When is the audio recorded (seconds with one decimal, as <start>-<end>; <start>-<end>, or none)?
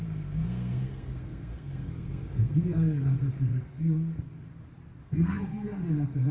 4.5-5.0